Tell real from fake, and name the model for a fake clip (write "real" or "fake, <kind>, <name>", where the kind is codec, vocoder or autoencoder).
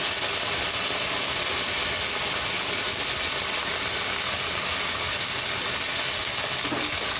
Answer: real